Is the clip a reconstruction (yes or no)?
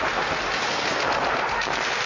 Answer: no